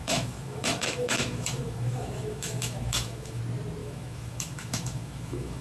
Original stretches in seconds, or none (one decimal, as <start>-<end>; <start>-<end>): 3.4-3.8